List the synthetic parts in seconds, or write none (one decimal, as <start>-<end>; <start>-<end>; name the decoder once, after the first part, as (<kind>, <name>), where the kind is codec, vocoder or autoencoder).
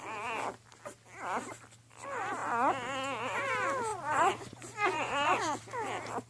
3.9-5.6 (vocoder, Vocos)